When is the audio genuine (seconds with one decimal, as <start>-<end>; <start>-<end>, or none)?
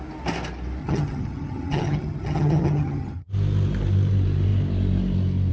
0.0-0.8; 3.3-5.5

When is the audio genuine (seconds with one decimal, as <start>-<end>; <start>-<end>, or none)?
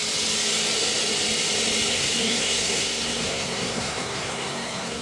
0.0-1.9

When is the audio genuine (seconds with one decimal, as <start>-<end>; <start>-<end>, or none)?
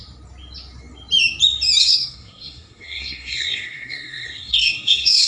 0.0-1.8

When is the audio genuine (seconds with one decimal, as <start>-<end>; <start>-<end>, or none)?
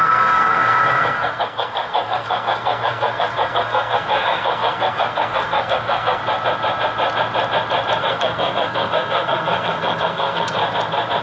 6.2-8.0; 10.6-11.2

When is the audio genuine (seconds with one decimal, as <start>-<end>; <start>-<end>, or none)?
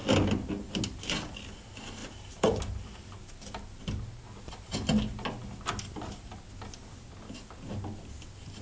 0.0-2.0; 2.6-8.6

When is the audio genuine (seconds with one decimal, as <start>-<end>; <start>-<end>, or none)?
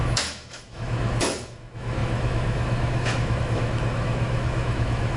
none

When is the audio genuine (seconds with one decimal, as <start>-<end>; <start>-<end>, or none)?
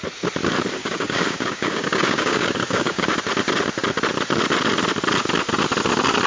0.0-0.8; 3.1-6.3